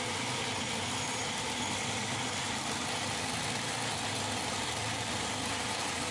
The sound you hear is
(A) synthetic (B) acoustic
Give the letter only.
B